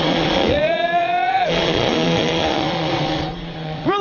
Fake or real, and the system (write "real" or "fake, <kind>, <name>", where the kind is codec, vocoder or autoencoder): fake, vocoder, Vocos